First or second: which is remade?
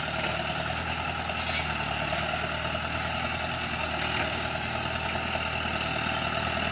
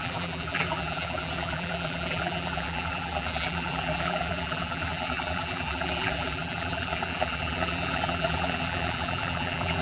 second